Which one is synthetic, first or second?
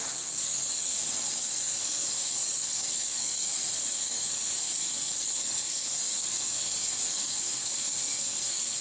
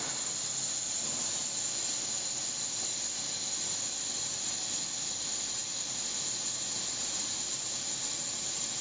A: first